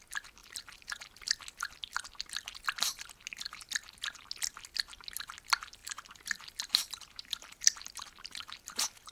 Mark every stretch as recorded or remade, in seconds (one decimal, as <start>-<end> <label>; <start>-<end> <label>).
0.0-0.4 recorded; 0.4-1.2 remade; 1.2-5.8 recorded; 5.8-8.6 remade; 8.6-9.1 recorded